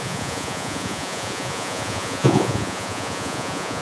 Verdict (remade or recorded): remade